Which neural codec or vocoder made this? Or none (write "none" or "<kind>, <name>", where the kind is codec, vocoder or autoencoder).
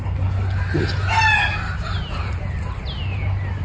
none